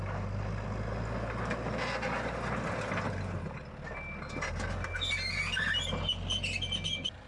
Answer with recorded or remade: recorded